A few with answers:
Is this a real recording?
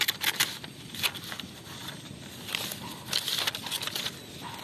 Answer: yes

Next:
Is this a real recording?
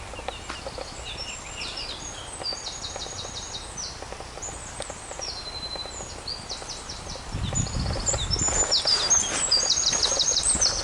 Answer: yes